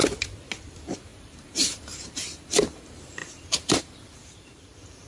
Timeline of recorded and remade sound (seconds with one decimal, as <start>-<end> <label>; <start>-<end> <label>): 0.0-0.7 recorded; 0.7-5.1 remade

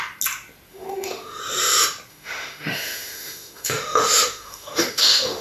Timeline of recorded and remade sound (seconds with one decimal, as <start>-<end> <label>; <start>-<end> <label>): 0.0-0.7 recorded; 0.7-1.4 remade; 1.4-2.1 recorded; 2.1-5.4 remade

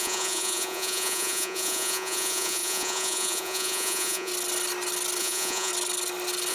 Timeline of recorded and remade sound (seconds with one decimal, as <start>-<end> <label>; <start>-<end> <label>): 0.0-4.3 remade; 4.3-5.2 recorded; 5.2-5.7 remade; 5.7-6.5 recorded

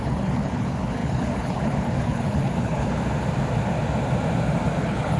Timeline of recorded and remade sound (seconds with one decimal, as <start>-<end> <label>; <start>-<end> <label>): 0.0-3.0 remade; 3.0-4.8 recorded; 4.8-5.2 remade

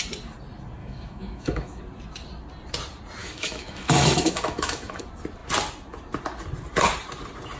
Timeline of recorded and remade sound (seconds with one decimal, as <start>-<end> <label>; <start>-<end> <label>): 0.0-0.8 recorded; 0.8-1.8 remade; 1.8-3.2 recorded; 3.2-5.0 remade; 5.0-7.6 recorded

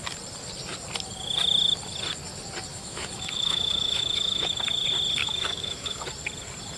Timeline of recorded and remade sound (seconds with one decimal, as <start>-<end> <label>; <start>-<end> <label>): 0.0-2.7 recorded; 2.7-4.6 remade; 4.6-5.2 recorded; 5.2-6.0 remade; 6.0-6.8 recorded

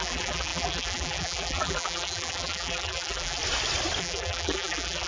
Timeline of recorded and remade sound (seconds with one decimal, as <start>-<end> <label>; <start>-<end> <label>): 0.0-3.4 remade; 3.4-4.0 recorded; 4.0-5.1 remade